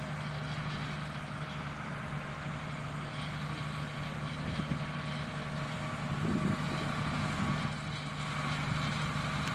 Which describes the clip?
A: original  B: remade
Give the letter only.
A